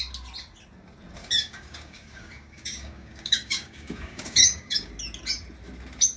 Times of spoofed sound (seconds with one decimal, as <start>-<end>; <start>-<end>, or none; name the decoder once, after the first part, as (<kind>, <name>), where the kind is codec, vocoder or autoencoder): 1.2-4.9 (codec, DAC)